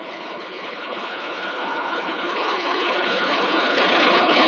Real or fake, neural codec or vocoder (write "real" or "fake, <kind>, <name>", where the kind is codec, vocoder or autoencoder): fake, codec, HILCodec